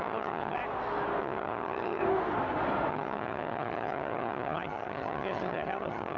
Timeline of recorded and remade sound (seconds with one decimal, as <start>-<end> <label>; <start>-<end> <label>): 0.0-0.6 remade; 0.6-1.2 recorded; 1.2-2.0 remade; 2.0-2.9 recorded; 2.9-6.2 remade

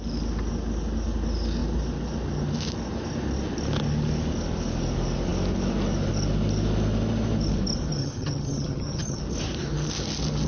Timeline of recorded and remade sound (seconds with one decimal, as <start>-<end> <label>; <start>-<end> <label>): 0.0-8.0 recorded; 8.0-9.2 remade; 9.2-10.5 recorded

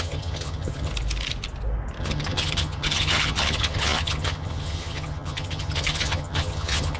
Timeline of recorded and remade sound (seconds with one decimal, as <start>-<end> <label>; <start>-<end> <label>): 0.0-0.9 remade; 0.9-2.0 recorded; 2.0-7.0 remade

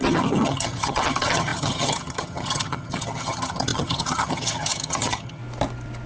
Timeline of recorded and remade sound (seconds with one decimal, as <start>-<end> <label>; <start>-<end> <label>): 0.0-5.4 remade; 5.4-6.1 recorded

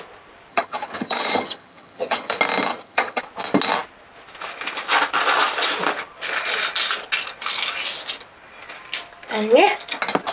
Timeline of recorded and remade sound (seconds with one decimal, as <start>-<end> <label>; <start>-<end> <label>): 0.0-0.5 recorded; 0.5-2.3 remade; 2.3-2.7 recorded; 2.7-3.2 remade; 3.2-10.3 recorded

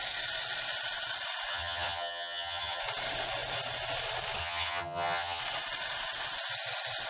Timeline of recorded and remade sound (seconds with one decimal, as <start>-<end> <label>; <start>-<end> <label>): 0.0-1.5 recorded; 1.5-2.8 remade; 2.8-4.4 recorded; 4.4-5.4 remade; 5.4-7.1 recorded

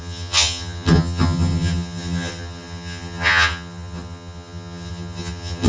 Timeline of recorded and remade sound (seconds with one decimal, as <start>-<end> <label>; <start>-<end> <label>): 0.0-5.7 remade

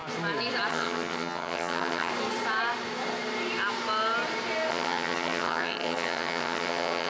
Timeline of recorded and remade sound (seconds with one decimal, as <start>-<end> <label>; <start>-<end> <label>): 0.0-0.7 recorded; 0.7-2.1 remade; 2.1-4.7 recorded; 4.7-7.1 remade